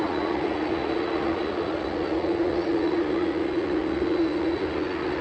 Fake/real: fake